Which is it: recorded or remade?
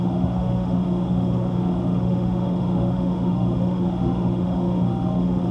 remade